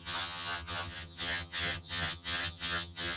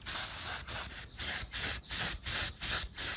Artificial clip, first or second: first